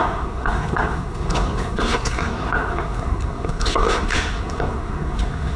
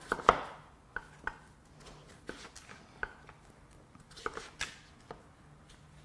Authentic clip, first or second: second